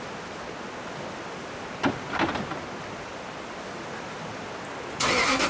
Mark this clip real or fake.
real